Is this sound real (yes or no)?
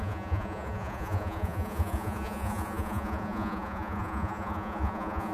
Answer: no